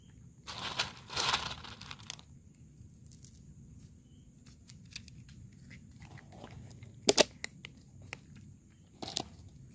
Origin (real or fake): real